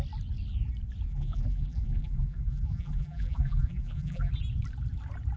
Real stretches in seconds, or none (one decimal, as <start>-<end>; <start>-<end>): 0.0-1.1; 4.3-5.4